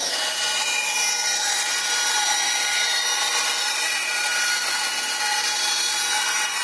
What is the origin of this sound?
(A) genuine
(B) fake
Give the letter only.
A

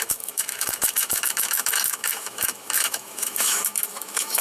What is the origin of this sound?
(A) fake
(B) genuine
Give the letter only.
A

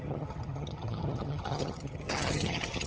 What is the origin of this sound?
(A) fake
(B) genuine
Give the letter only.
A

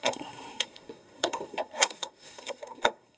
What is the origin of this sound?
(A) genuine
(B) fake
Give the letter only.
B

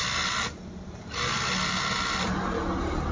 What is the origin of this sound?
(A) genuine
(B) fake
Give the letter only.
A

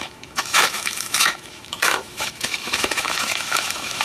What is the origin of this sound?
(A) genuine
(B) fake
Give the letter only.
B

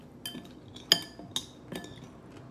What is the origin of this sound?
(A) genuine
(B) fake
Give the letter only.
A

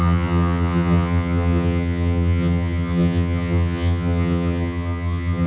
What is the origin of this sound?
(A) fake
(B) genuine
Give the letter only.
A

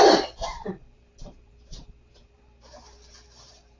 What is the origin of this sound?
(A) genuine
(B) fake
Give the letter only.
B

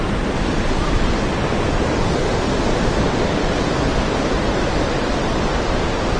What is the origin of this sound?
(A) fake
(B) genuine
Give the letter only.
B